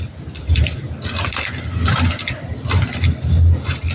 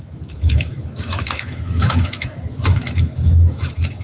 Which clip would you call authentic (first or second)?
first